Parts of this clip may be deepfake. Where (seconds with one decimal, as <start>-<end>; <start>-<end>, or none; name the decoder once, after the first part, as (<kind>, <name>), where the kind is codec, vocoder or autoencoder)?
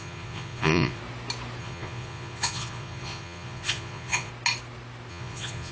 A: 0.0-1.0 (vocoder, Vocos); 1.6-4.3; 5.1-5.7